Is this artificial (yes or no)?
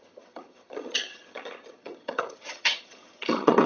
yes